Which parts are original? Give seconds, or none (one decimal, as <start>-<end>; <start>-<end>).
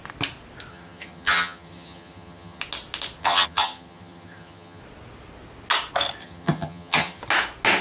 0.0-0.7; 2.6-3.2; 4.8-6.2; 7.2-7.8